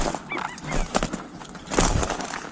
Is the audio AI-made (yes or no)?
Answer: no